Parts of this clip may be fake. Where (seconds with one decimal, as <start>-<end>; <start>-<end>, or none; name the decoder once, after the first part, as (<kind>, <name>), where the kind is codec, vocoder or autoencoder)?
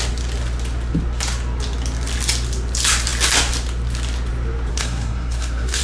4.7-5.8 (codec, SNAC)